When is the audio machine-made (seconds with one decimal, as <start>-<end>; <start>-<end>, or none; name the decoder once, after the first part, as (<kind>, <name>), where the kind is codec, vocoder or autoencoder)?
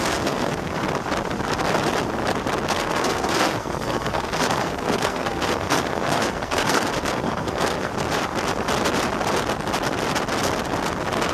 0.0-0.8 (codec, SNAC); 2.7-7.9